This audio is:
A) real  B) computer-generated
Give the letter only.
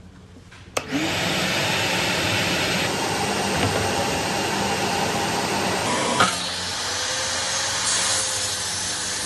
A